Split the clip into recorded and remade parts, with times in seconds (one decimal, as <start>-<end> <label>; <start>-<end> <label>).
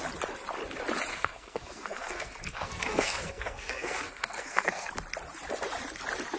0.0-1.1 recorded; 1.1-4.9 remade; 4.9-6.4 recorded